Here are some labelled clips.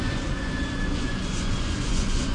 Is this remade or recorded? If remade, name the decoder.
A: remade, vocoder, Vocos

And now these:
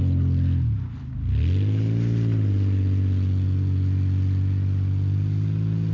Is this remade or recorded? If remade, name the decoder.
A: recorded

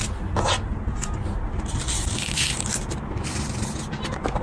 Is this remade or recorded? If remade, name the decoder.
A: recorded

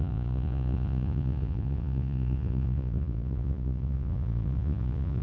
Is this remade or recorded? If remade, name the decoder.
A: remade, vocoder, Vocos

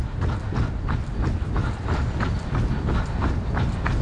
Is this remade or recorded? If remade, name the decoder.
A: recorded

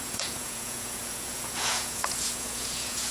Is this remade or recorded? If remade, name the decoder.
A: remade, vocoder, Vocos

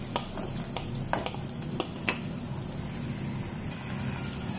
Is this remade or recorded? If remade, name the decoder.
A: recorded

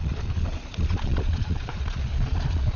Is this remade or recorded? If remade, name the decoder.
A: remade, vocoder, Vocos